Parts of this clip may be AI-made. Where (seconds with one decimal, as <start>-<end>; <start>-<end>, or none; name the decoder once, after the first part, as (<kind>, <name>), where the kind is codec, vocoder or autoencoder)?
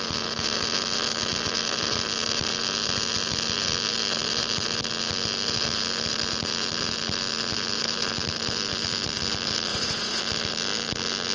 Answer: 9.7-10.2 (vocoder, Vocos)